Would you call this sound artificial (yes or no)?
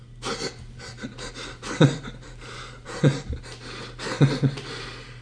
no